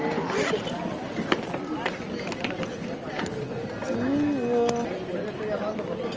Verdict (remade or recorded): recorded